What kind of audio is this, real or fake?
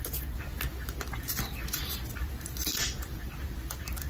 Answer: real